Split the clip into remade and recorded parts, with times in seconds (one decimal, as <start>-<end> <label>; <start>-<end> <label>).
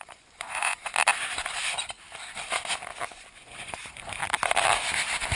0.0-0.9 remade; 0.9-3.1 recorded; 3.1-4.2 remade; 4.2-5.3 recorded